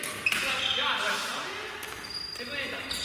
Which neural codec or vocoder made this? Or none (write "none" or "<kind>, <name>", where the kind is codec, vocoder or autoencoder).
none